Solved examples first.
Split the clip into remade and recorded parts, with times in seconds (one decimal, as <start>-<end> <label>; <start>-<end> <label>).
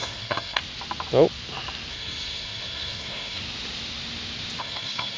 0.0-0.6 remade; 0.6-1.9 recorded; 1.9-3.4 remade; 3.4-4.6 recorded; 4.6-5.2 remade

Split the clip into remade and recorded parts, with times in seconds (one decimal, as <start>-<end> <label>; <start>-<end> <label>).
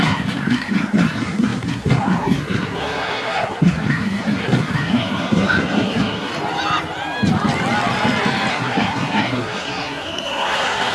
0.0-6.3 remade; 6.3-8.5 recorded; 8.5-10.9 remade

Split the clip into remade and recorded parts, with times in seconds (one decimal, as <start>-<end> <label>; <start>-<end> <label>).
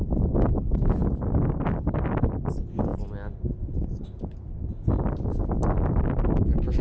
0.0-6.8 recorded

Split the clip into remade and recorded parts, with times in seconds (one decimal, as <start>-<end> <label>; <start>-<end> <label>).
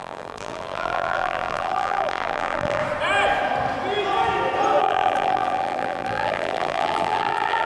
0.0-2.8 remade; 2.8-4.8 recorded; 4.8-7.6 remade